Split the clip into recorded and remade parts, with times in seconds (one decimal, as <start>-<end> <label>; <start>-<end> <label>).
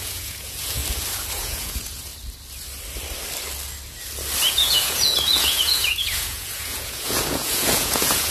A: 0.0-0.8 remade; 0.8-1.3 recorded; 1.3-2.1 remade; 2.1-4.5 recorded; 4.5-8.3 remade